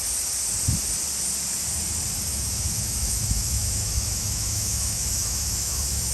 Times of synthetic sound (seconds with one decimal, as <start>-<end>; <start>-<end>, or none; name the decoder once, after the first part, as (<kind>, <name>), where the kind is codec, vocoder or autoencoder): 2.3-6.1 (autoencoder, DAC-VAE)